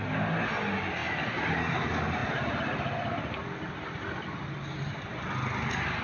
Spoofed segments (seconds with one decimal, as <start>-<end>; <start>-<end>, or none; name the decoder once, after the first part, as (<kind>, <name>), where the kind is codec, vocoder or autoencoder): none